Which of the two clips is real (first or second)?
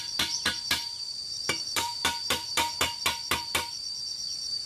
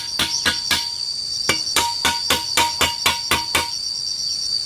second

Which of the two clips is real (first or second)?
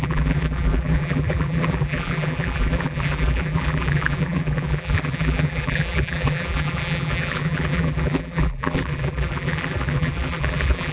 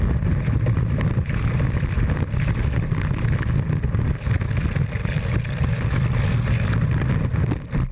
second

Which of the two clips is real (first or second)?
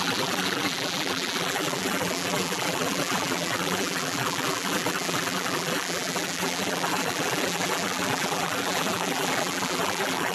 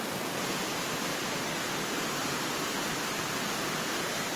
second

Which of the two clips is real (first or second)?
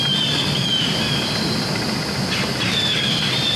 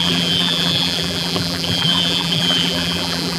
first